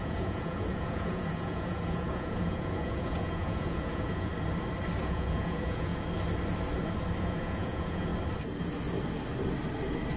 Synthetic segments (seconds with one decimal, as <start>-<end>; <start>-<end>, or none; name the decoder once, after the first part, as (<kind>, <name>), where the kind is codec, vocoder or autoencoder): 0.0-4.3 (vocoder, Vocos); 5.0-5.9; 7.2-8.1